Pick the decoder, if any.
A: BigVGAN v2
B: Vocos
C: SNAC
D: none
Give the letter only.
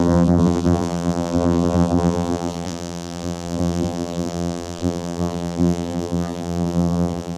A